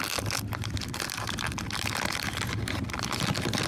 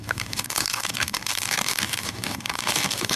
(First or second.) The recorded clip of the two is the first